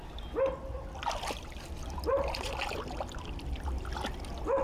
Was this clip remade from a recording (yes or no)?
no